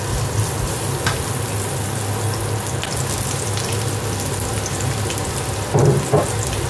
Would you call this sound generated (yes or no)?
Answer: no